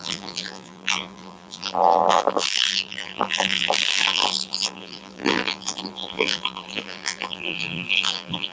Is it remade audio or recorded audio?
remade